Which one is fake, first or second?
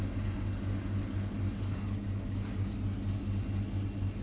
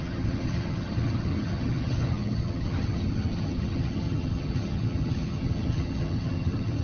second